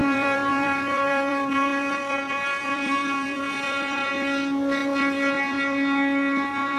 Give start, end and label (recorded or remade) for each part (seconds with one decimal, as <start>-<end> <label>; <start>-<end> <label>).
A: 0.0-4.1 remade; 4.1-6.8 recorded